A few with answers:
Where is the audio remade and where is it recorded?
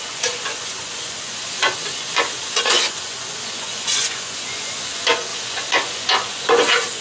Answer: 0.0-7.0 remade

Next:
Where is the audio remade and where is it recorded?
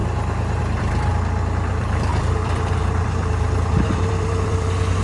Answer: 0.0-0.6 recorded; 0.6-1.1 remade; 1.1-1.7 recorded; 1.7-5.0 remade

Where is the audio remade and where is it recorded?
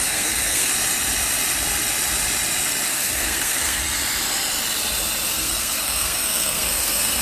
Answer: 0.0-0.7 remade; 0.7-2.9 recorded; 2.9-3.8 remade; 3.8-5.3 recorded; 5.3-7.2 remade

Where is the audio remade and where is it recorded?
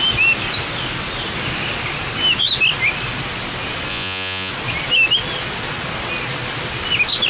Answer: 0.0-3.9 recorded; 3.9-4.5 remade; 4.5-7.3 recorded